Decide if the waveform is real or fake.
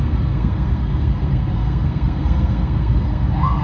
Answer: fake